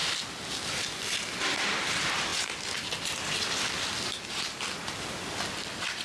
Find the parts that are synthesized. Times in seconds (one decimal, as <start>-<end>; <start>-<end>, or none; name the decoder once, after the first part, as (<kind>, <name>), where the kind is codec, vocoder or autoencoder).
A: none